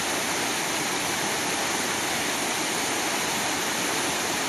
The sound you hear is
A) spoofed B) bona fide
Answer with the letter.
B